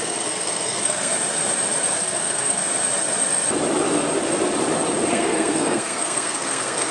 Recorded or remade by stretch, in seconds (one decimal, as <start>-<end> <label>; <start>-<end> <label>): 0.0-1.1 remade; 1.1-1.9 recorded; 1.9-2.6 remade; 2.6-5.1 recorded; 5.1-6.9 remade